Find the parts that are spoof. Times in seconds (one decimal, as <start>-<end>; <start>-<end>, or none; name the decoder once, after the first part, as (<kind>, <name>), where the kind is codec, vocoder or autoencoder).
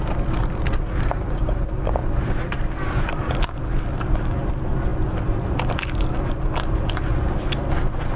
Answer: 2.0-3.4 (vocoder, BigVGAN v2)